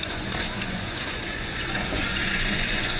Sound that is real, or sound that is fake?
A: fake